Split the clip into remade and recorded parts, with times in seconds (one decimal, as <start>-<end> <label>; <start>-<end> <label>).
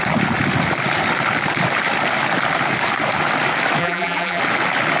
0.0-3.8 recorded; 3.8-4.4 remade; 4.4-5.0 recorded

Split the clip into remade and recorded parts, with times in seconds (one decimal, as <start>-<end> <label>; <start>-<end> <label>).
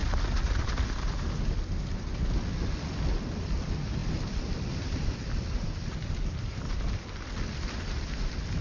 0.0-8.6 recorded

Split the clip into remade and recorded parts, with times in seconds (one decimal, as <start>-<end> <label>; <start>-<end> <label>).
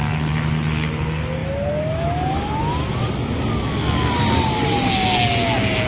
0.0-5.9 recorded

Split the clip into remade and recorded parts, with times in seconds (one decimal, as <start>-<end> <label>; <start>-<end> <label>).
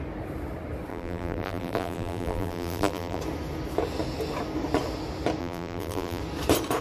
0.0-0.9 recorded; 0.9-3.2 remade; 3.2-5.4 recorded; 5.4-6.2 remade; 6.2-6.8 recorded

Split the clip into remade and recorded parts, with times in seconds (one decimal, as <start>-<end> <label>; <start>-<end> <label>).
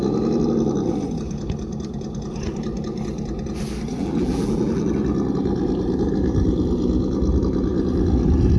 0.0-4.0 recorded; 4.0-4.9 remade; 4.9-8.6 recorded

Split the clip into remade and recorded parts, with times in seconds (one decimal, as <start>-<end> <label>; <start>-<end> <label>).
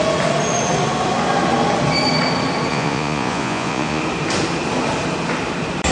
0.0-2.7 recorded; 2.7-4.0 remade; 4.0-5.9 recorded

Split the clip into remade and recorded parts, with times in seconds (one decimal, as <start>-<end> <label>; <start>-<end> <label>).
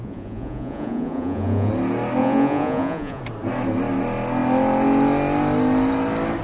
0.0-1.7 remade; 1.7-2.2 recorded; 2.2-3.2 remade; 3.2-6.4 recorded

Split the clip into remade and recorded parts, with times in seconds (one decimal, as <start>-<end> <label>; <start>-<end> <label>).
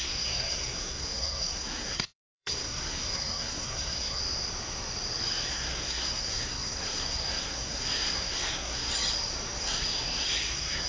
0.0-4.2 remade; 4.2-5.5 recorded; 5.5-8.9 remade; 8.9-9.6 recorded; 9.6-10.9 remade